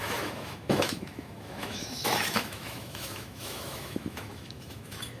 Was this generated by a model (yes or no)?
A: yes